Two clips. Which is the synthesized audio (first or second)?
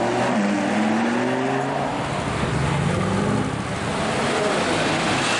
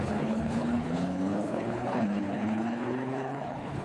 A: second